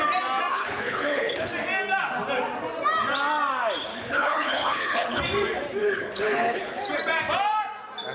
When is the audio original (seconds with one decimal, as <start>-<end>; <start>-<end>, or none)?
0.0-0.5; 1.5-3.9; 5.2-5.8; 6.8-8.1